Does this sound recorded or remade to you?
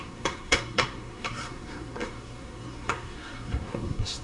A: remade